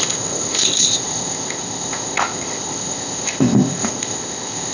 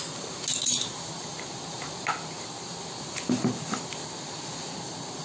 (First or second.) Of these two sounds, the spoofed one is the first